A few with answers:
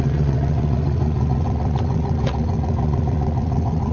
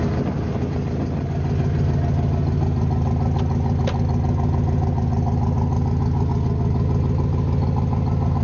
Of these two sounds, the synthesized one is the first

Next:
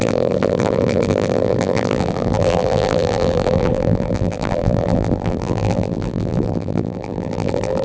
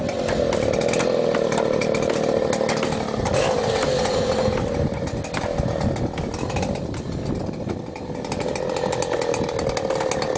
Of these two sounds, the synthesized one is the first